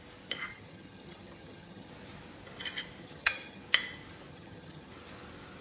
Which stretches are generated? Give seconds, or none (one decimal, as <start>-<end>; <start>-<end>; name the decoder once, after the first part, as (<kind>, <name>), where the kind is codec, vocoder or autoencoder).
0.5-1.9 (vocoder, HiFi-GAN); 3.0-3.6; 4.3-4.9